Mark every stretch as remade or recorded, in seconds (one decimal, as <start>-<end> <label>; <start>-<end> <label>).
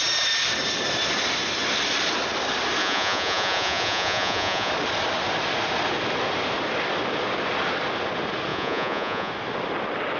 0.0-2.8 recorded; 2.8-4.7 remade; 4.7-8.5 recorded; 8.5-9.3 remade; 9.3-10.2 recorded